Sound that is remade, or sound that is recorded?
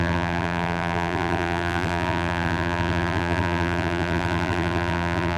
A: remade